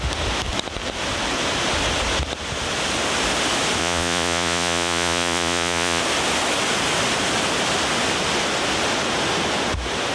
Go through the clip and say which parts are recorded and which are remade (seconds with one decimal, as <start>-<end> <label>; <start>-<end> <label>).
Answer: 0.0-3.8 recorded; 3.8-6.0 remade; 6.0-10.1 recorded